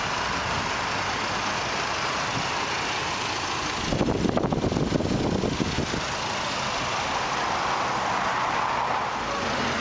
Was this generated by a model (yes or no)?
no